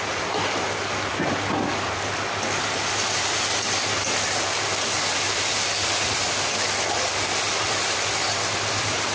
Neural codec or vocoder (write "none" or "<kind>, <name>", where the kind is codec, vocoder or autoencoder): none